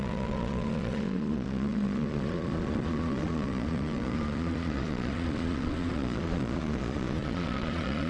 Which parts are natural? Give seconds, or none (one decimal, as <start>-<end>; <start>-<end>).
none